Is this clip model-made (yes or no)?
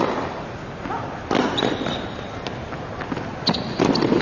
no